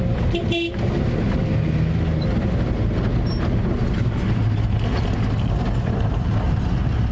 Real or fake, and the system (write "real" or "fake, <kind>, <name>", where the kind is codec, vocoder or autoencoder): real